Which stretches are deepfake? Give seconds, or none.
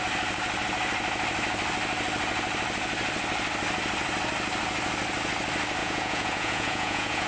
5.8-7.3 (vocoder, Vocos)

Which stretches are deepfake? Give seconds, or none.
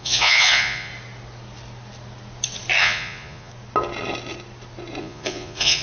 0.0-0.9 (vocoder, Vocos); 2.8-3.5; 5.0-5.8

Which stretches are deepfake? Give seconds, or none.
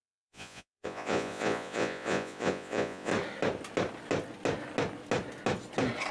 0.0-3.1 (vocoder, Vocos)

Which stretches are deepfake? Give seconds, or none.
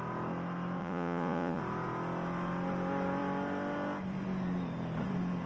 0.8-1.6 (vocoder, Vocos)